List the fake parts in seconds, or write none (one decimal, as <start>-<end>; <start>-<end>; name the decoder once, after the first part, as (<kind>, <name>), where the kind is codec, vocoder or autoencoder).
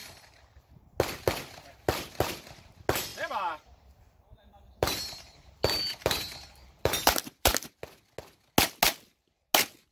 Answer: 3.1-7.7 (vocoder, BigVGAN v2)